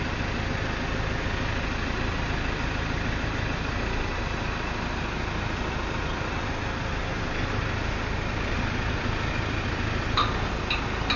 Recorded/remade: recorded